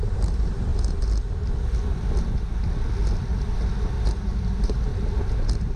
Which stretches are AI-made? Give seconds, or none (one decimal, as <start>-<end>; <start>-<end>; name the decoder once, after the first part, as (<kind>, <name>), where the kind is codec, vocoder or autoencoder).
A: 0.0-0.7 (vocoder, BigVGAN v2); 4.2-4.9